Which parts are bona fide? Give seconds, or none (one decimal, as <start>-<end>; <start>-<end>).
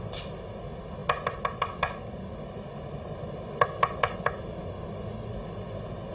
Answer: 0.0-6.1